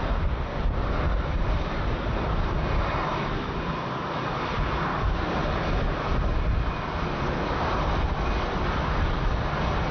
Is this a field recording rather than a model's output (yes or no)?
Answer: yes